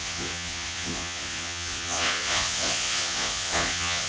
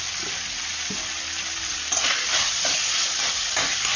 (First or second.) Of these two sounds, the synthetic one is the first